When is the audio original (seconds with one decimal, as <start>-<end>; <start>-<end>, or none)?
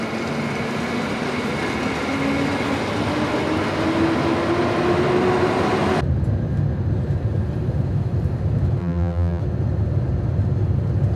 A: 0.0-8.8; 9.4-11.2